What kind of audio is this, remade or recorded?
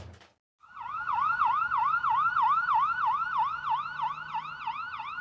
recorded